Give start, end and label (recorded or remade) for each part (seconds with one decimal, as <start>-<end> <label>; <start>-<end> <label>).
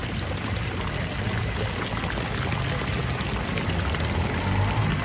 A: 0.0-5.0 recorded